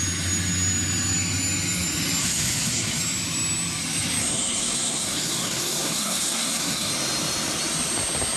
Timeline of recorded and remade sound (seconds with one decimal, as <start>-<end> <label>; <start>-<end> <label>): 0.0-2.2 recorded; 2.2-3.0 remade; 3.0-4.2 recorded; 4.2-6.9 remade; 6.9-8.4 recorded

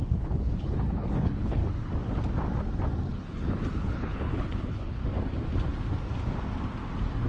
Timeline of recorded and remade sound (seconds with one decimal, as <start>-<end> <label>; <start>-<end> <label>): 0.0-1.6 remade; 1.6-3.1 recorded; 3.1-5.0 remade; 5.0-7.3 recorded

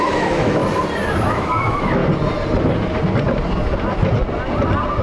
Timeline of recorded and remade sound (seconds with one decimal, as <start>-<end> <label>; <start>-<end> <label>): 0.0-0.6 remade; 0.6-1.2 recorded; 1.2-2.0 remade; 2.0-5.0 recorded